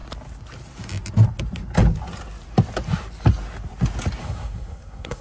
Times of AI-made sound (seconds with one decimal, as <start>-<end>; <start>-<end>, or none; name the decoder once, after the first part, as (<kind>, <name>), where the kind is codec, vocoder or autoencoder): 4.2-5.2 (codec, SNAC)